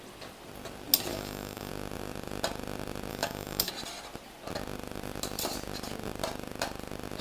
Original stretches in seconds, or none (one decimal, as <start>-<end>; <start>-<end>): 0.0-1.1; 1.7-3.1; 3.7-7.2